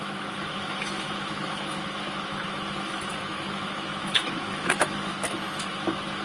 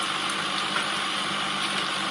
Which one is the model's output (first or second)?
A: first